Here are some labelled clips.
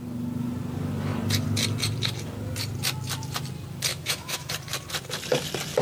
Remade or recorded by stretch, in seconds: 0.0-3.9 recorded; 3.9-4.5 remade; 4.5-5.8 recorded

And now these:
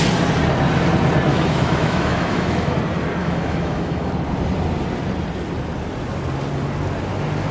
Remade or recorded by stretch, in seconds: 0.0-1.3 recorded; 1.3-2.8 remade; 2.8-3.2 recorded; 3.2-4.1 remade; 4.1-7.5 recorded

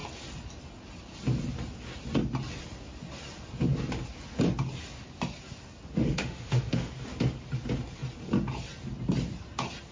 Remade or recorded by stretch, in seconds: 0.0-5.9 recorded; 5.9-6.9 remade; 6.9-9.9 recorded